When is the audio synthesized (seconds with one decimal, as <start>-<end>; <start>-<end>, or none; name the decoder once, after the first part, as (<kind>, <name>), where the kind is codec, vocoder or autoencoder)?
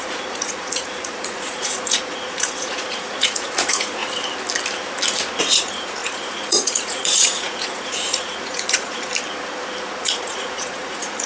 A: 0.0-4.0 (vocoder, Vocos); 5.4-9.1; 10.0-11.3